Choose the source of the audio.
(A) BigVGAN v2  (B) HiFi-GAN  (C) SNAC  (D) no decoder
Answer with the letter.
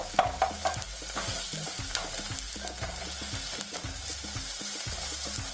D